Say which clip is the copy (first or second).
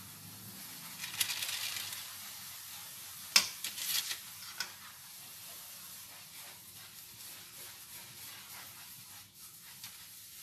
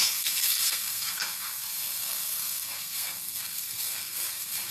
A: second